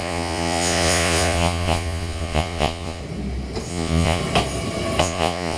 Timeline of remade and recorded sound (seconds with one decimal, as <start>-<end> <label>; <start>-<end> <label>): 0.0-3.0 remade; 3.0-3.7 recorded; 3.7-4.2 remade; 4.2-5.0 recorded; 5.0-5.6 remade